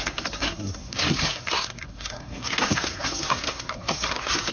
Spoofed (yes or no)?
yes